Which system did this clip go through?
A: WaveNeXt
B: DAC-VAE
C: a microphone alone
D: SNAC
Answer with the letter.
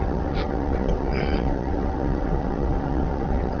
A